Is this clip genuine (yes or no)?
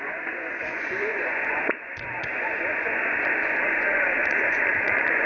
no